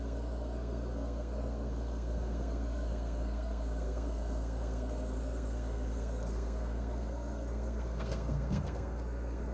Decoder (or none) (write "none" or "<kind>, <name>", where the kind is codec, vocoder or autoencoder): codec, SNAC